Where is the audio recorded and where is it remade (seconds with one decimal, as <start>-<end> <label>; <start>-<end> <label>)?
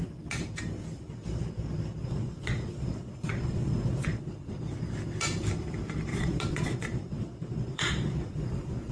0.0-2.0 recorded; 2.0-4.8 remade; 4.8-6.1 recorded; 6.1-8.9 remade